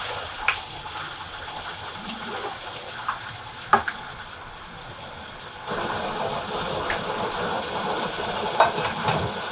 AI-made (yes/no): no